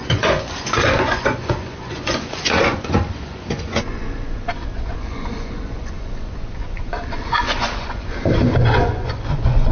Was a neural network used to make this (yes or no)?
yes